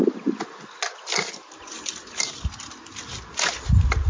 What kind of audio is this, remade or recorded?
recorded